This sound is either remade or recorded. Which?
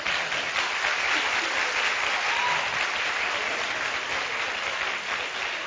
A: recorded